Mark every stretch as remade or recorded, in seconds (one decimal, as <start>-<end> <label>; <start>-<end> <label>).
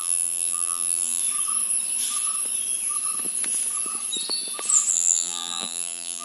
0.0-1.2 remade; 1.2-4.9 recorded; 4.9-6.2 remade